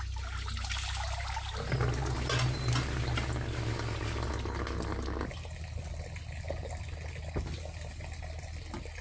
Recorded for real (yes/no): yes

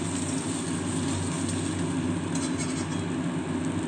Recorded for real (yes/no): yes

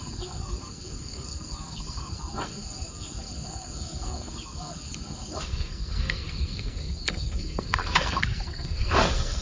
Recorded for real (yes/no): no